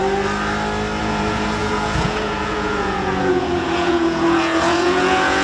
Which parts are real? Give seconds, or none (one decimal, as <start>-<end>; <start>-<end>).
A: 0.0-1.0